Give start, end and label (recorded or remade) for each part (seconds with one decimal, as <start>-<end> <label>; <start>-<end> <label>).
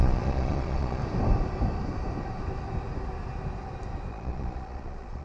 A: 0.0-1.0 remade; 1.0-4.1 recorded; 4.1-5.2 remade